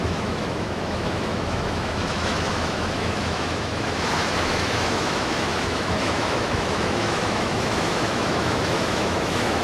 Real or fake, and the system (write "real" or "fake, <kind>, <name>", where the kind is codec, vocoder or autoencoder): fake, autoencoder, DAC-VAE